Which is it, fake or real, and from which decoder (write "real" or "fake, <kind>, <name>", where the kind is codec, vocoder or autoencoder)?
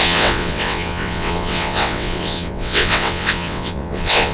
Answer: fake, vocoder, WaveNeXt